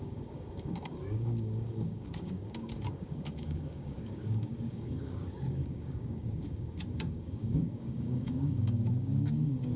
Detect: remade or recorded remade